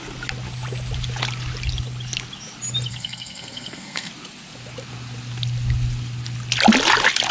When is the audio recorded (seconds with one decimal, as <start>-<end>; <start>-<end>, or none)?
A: 0.0-2.9; 4.1-7.3

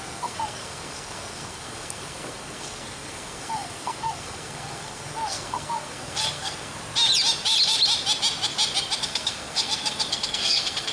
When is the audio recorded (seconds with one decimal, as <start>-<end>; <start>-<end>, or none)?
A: 6.8-9.0

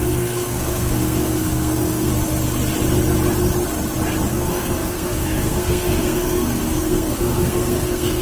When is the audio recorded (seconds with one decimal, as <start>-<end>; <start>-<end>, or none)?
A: 2.1-4.3

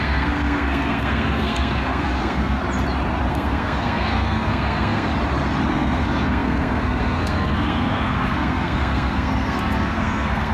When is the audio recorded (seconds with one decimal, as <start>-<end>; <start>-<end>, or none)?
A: 2.6-3.3; 5.1-5.7

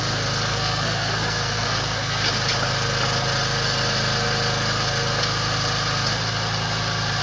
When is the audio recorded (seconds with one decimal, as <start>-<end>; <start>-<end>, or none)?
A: 0.0-0.5; 2.3-7.2

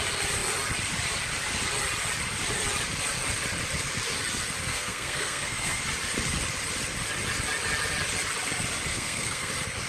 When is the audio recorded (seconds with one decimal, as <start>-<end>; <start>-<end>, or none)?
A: 0.0-4.7; 5.8-8.9; 9.5-9.9

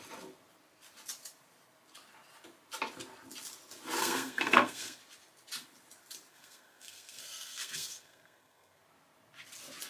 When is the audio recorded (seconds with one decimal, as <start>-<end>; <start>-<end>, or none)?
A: 0.0-4.0; 5.0-6.3; 8.8-9.9

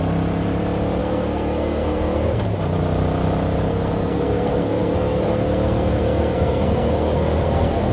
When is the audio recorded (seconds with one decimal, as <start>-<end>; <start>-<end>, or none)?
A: 0.0-1.0; 2.4-3.7